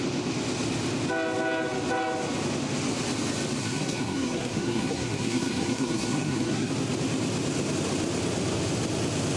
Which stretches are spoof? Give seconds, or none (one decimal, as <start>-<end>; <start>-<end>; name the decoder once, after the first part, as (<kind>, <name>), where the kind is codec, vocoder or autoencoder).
3.6-6.7 (codec, SNAC)